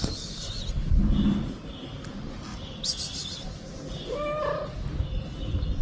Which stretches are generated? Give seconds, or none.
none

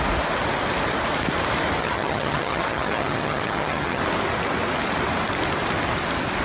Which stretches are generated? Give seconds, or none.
1.8-4.0 (vocoder, HiFi-GAN)

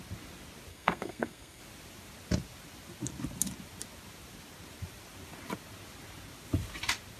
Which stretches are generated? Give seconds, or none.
0.7-1.6 (codec, SNAC)

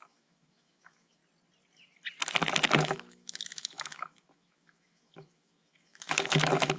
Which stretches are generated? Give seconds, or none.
0.0-1.2 (autoencoder, DAC-VAE); 2.8-6.8